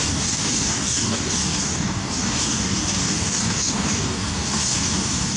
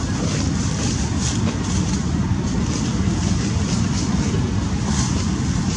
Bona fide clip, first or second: second